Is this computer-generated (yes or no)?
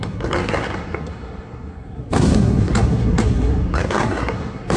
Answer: yes